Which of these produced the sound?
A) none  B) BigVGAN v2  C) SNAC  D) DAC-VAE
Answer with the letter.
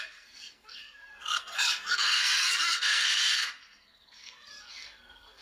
C